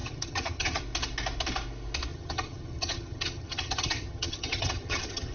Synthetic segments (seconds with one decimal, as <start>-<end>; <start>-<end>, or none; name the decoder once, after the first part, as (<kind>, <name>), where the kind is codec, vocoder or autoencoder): 0.0-0.8 (vocoder, HiFi-GAN); 2.1-5.3